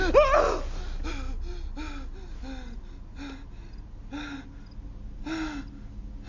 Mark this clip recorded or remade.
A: recorded